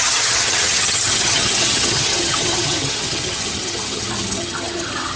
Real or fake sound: fake